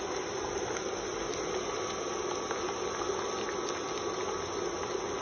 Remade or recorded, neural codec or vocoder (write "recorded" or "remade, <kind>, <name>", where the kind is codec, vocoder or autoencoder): recorded